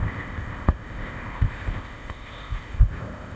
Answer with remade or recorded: remade